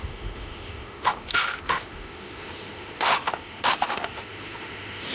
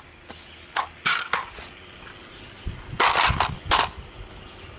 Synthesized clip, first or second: first